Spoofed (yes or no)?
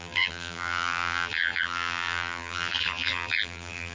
yes